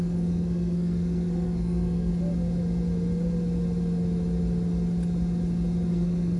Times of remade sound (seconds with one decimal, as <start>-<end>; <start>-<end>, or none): 0.0-2.1; 5.9-6.4